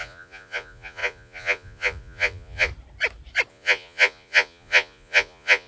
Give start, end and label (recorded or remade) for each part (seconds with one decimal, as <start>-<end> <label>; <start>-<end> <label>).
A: 0.0-2.7 remade; 2.7-3.5 recorded; 3.5-5.7 remade